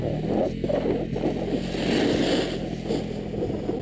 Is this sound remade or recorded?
recorded